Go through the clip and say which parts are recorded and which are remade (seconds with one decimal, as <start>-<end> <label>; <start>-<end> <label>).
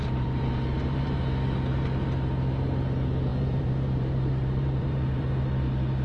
0.0-1.2 remade; 1.2-3.3 recorded; 3.3-5.3 remade; 5.3-6.0 recorded